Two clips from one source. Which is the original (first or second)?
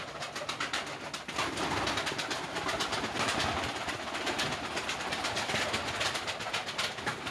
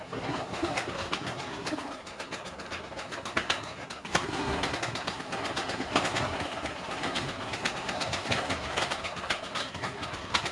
first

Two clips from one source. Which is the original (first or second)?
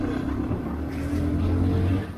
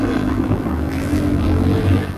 first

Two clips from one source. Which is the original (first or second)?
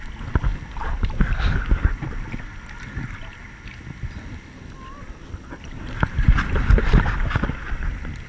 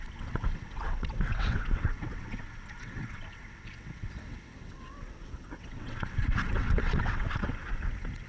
first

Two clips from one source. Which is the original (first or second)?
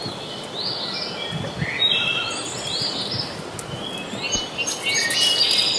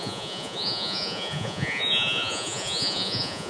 first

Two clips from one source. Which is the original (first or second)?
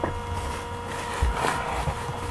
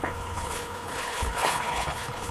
first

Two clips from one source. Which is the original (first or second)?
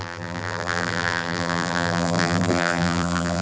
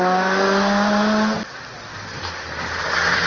second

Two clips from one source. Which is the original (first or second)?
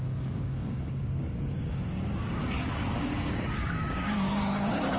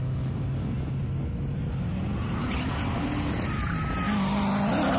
second